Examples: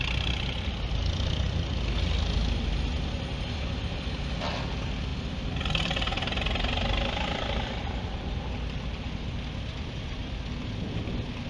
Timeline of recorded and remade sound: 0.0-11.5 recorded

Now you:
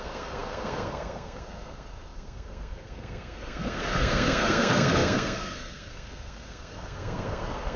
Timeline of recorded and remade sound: 0.0-7.8 remade

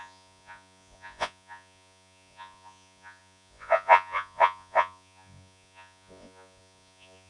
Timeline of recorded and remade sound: 0.0-7.3 remade

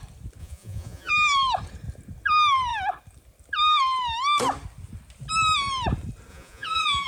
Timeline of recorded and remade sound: 0.0-0.4 recorded; 0.4-1.1 remade; 1.1-6.3 recorded; 6.3-7.1 remade

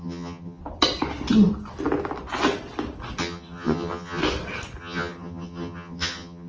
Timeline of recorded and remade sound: 0.0-0.6 remade; 0.6-3.2 recorded; 3.2-4.2 remade; 4.2-4.8 recorded; 4.8-6.5 remade

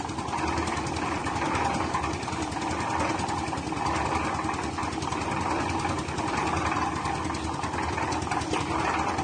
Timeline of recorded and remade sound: 0.0-1.2 recorded; 1.2-2.7 remade; 2.7-9.2 recorded